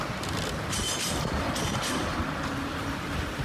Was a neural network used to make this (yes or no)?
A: no